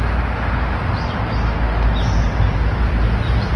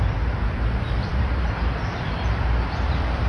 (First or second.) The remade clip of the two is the second